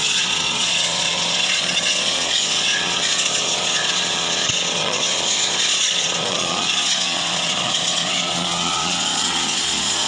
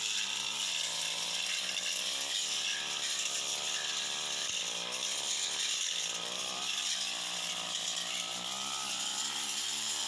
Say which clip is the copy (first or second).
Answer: first